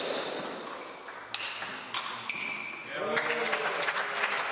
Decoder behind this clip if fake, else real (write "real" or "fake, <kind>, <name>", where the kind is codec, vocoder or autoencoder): real